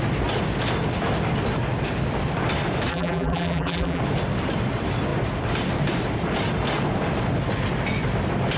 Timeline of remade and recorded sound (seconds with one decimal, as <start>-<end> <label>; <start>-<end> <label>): 0.0-2.9 recorded; 2.9-4.0 remade; 4.0-8.6 recorded